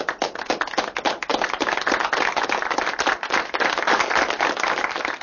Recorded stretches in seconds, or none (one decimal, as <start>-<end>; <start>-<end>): 0.0-5.2